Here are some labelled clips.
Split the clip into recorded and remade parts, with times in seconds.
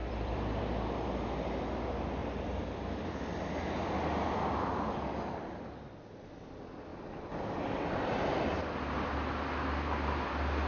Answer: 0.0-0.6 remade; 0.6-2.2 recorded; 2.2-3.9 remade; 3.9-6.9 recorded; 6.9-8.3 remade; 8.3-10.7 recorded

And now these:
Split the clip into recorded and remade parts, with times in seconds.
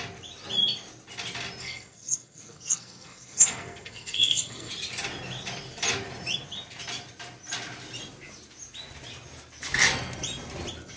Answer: 0.0-1.6 recorded; 1.6-4.7 remade; 4.7-11.0 recorded